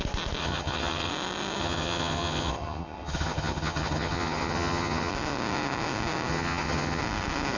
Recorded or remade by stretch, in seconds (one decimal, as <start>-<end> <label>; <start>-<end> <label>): 0.0-0.4 recorded; 0.4-1.1 remade; 1.1-1.6 recorded; 1.6-5.1 remade; 5.1-6.3 recorded; 6.3-7.0 remade; 7.0-7.6 recorded